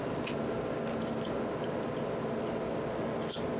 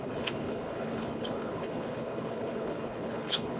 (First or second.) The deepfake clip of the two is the second